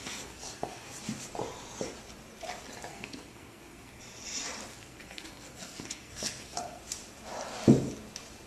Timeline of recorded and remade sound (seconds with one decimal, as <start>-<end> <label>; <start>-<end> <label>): 0.0-1.0 remade; 1.0-2.9 recorded; 2.9-4.0 remade; 4.0-4.7 recorded; 4.7-6.8 remade; 6.8-8.5 recorded